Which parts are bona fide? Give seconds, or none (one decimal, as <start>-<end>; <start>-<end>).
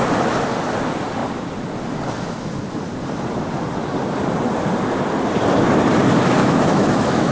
0.0-6.4